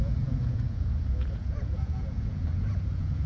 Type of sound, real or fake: fake